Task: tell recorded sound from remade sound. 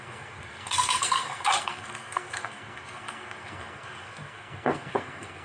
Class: remade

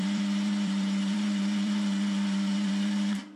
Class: remade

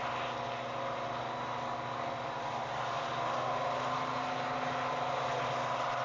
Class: recorded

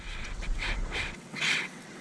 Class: remade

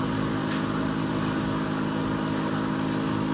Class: recorded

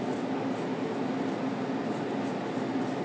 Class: recorded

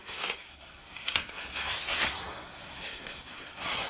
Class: remade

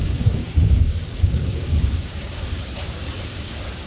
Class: remade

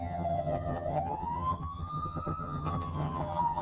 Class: remade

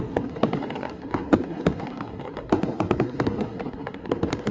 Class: remade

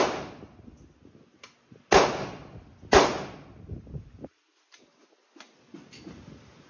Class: recorded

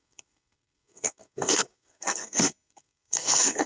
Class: remade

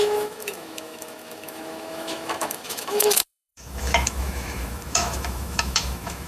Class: remade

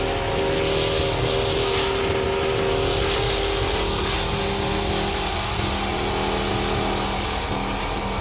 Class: recorded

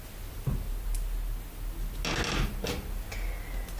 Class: recorded